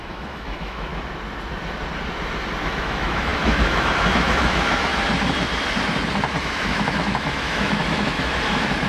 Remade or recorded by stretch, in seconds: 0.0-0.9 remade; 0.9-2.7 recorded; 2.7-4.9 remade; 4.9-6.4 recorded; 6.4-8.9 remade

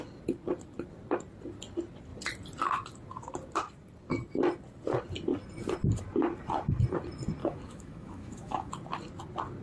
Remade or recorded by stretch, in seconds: 0.0-7.4 recorded; 7.4-8.7 remade; 8.7-9.6 recorded

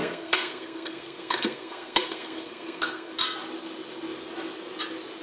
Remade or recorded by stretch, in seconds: 0.0-3.1 remade; 3.1-5.2 recorded

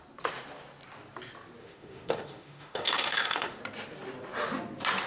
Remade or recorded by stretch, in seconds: 0.0-1.6 recorded; 1.6-3.6 remade; 3.6-5.1 recorded